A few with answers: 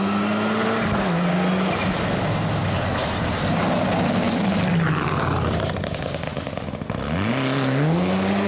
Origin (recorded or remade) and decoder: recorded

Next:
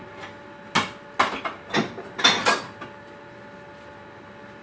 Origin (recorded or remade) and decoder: recorded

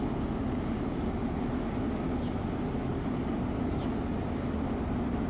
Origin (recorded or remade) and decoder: recorded